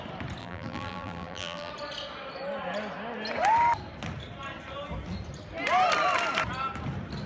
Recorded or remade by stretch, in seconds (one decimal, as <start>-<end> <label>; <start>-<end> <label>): 0.0-0.4 recorded; 0.4-1.7 remade; 1.7-7.3 recorded